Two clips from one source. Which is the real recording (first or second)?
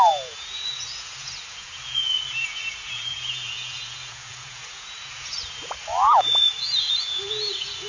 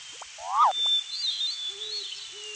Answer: second